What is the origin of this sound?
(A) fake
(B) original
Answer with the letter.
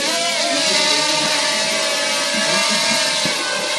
B